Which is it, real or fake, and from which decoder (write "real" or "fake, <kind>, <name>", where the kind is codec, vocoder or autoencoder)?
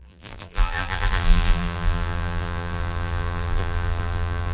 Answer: fake, vocoder, BigVGAN v2